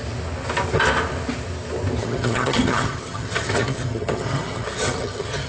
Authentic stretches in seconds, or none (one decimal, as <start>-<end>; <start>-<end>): 0.0-2.0